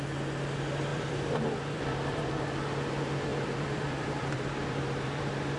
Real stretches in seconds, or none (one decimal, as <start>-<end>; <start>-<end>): 0.0-0.9; 2.2-3.3